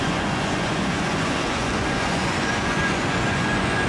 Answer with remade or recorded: remade